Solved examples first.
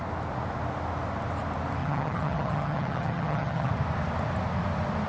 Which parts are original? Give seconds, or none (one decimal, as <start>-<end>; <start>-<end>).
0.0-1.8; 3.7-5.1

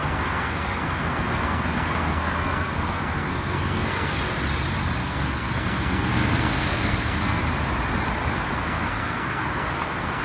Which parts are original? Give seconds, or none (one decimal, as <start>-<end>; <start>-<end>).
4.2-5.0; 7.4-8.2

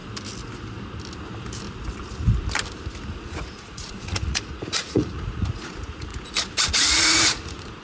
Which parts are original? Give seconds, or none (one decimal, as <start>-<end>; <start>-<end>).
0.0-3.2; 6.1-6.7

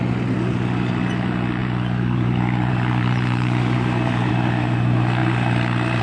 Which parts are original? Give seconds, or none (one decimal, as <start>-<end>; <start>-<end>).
0.0-1.6; 4.3-6.0

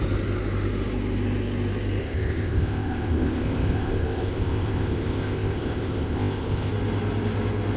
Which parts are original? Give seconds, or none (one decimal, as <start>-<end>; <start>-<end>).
0.0-2.0; 6.7-7.8

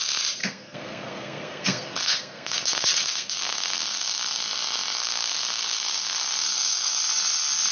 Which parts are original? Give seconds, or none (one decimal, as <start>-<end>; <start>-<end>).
0.0-0.4; 4.4-5.0; 7.0-7.7